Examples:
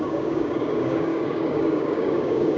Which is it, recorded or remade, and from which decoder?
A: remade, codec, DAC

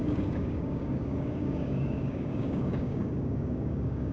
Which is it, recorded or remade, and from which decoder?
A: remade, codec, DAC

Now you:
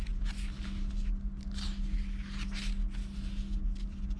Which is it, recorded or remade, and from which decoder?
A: recorded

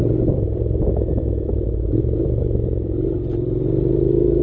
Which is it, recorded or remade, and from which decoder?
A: remade, vocoder, BigVGAN v2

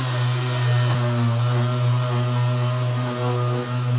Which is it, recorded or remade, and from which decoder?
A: recorded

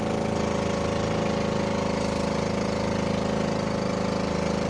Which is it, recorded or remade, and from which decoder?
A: recorded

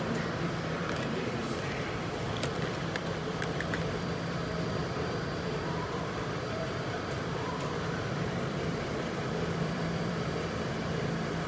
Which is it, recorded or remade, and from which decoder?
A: remade, vocoder, BigVGAN v2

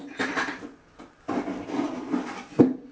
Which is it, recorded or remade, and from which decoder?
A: recorded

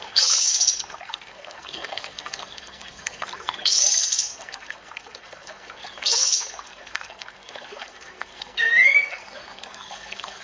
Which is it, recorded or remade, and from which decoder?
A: remade, codec, SNAC